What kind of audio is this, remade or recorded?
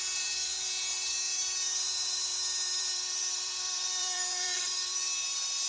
remade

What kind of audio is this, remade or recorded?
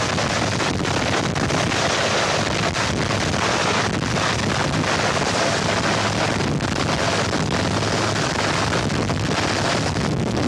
recorded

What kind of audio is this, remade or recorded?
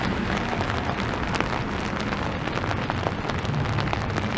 recorded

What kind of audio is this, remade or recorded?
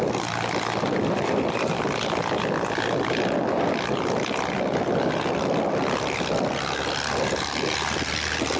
recorded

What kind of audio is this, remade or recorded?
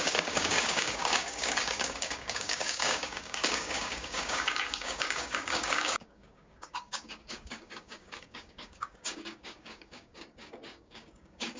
remade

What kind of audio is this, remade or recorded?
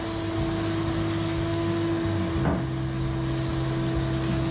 recorded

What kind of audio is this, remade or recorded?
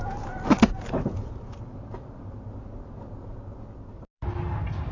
recorded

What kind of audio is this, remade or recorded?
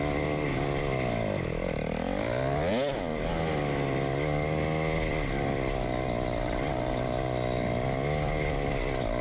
recorded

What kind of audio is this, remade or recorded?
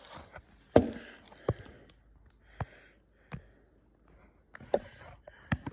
recorded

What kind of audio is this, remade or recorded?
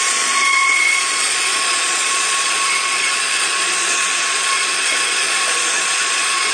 remade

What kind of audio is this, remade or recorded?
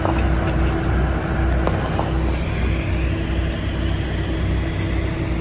recorded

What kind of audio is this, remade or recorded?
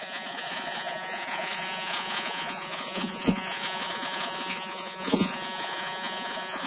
remade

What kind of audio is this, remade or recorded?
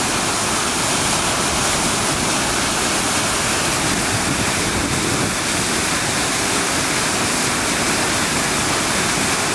recorded